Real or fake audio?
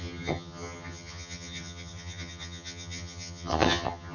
fake